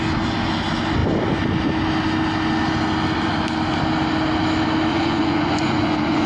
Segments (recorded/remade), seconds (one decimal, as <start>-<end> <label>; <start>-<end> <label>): 0.0-4.9 recorded; 4.9-6.3 remade